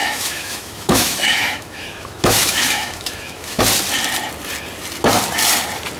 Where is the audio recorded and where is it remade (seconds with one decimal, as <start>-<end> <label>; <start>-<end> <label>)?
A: 0.0-3.6 remade; 3.6-6.0 recorded